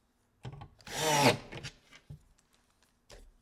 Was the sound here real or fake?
real